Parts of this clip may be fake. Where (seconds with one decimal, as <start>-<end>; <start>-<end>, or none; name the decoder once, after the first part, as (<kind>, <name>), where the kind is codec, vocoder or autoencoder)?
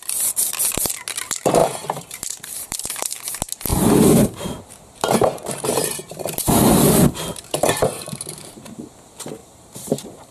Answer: 1.6-2.9 (vocoder, BigVGAN v2); 3.7-8.6; 9.4-10.3